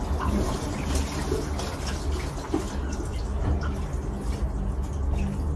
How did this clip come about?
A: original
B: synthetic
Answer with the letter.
A